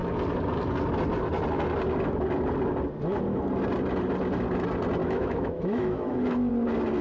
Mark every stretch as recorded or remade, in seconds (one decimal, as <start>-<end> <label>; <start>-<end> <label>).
0.0-5.0 recorded; 5.0-6.5 remade; 6.5-7.0 recorded